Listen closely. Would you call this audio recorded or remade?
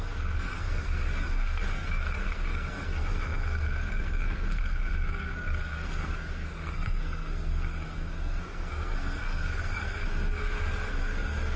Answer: remade